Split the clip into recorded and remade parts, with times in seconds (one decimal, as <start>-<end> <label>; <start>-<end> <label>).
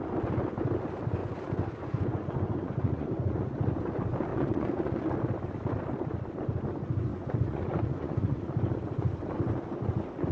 0.0-1.2 recorded; 1.2-3.7 remade; 3.7-4.3 recorded; 4.3-5.0 remade; 5.0-7.1 recorded; 7.1-8.4 remade; 8.4-10.3 recorded